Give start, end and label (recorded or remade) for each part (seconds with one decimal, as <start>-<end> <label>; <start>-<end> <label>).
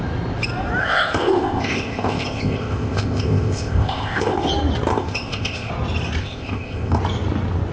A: 0.0-0.8 recorded; 0.8-4.5 remade; 4.5-4.9 recorded; 4.9-5.7 remade; 5.7-6.2 recorded; 6.2-7.0 remade; 7.0-7.7 recorded